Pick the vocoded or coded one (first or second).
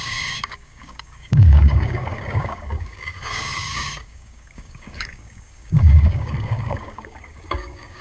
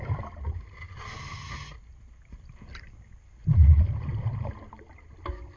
first